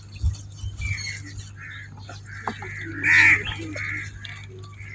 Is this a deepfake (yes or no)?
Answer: no